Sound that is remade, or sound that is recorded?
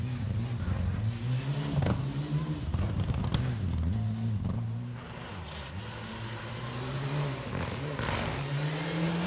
recorded